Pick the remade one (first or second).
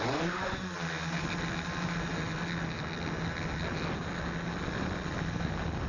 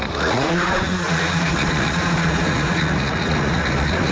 second